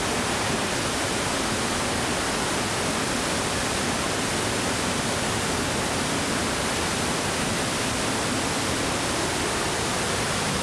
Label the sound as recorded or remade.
recorded